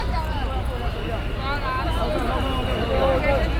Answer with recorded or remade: recorded